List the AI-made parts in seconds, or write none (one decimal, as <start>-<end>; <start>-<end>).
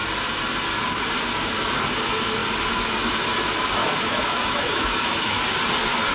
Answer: 3.8-5.4